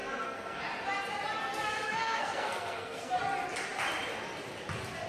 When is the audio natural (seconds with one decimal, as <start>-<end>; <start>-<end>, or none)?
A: 0.6-1.4; 3.2-5.1